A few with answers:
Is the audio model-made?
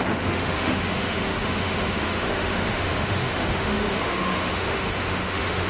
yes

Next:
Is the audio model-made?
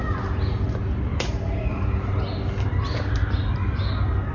no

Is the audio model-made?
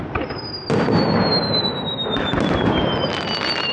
no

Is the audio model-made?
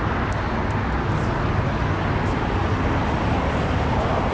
no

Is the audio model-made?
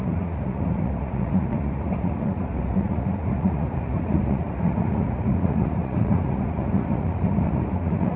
yes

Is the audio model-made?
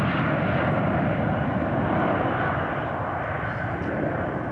no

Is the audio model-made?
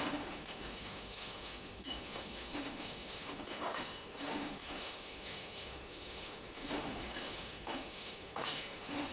yes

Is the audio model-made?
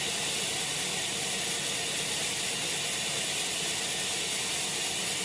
no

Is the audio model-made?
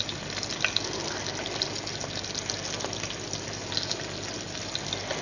no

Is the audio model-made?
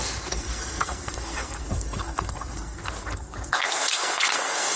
yes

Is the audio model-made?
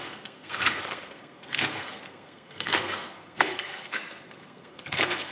yes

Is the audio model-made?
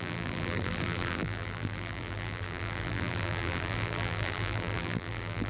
yes